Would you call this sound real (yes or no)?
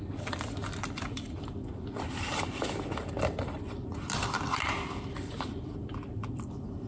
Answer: no